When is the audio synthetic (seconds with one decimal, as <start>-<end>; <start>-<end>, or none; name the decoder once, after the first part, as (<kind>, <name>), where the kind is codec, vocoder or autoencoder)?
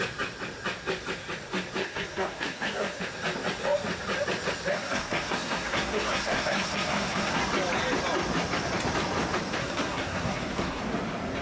1.8-3.0 (codec, SNAC); 4.7-7.4; 9.6-10.8